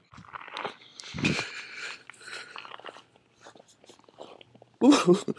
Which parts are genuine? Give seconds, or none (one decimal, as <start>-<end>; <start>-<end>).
0.0-5.4